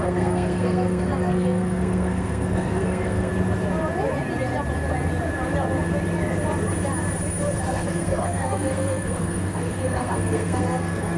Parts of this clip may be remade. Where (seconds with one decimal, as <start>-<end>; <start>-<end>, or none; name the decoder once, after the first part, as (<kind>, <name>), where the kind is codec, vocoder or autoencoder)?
0.0-3.3 (codec, SNAC); 7.7-11.2